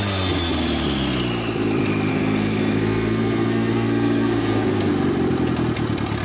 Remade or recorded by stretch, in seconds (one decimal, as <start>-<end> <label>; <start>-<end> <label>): 0.0-2.1 recorded; 2.1-4.9 remade; 4.9-6.2 recorded

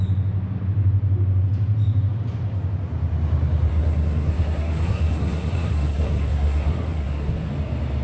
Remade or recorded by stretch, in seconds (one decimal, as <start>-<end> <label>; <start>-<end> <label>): 0.0-3.7 recorded; 3.7-7.5 remade; 7.5-8.0 recorded